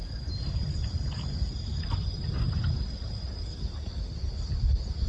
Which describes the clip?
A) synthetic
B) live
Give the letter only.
B